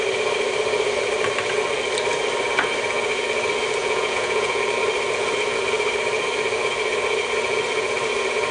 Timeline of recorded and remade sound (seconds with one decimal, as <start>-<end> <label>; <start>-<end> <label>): 0.0-3.8 recorded; 3.8-4.6 remade; 4.6-8.5 recorded